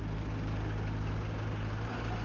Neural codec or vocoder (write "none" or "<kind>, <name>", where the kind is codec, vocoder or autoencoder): none